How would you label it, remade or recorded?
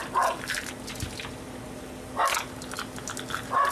recorded